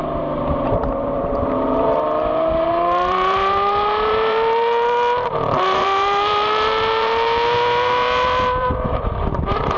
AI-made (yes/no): yes